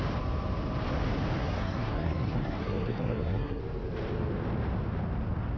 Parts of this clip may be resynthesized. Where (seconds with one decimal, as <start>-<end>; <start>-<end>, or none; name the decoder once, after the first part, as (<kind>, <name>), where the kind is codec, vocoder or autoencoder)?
1.4-3.6 (codec, SNAC)